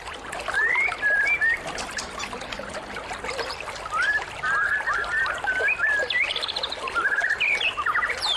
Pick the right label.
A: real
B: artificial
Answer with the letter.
B